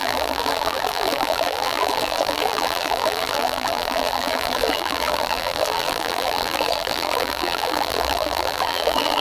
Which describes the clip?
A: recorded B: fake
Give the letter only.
B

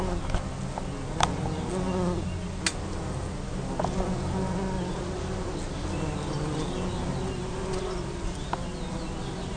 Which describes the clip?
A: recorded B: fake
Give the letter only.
A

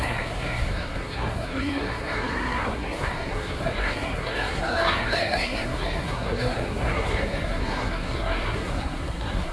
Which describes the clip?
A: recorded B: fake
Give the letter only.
B